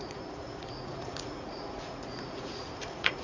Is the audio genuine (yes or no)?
no